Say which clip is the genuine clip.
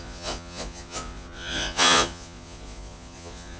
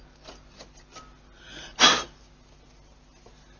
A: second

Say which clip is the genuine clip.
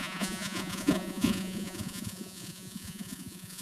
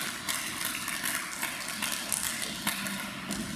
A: second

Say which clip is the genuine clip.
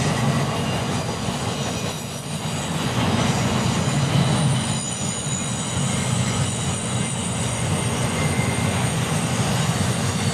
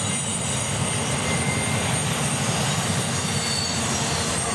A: second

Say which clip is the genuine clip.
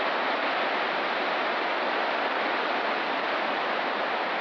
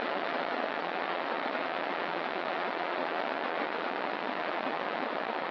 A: first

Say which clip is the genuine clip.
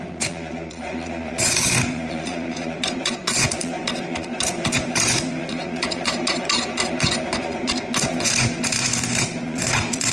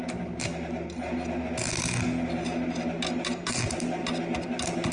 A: second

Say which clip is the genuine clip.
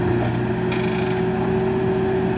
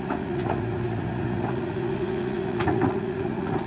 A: first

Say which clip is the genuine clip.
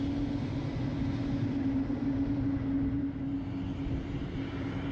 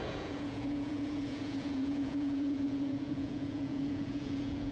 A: first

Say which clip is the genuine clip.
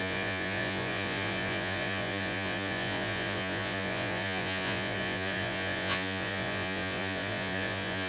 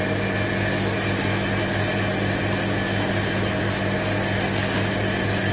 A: second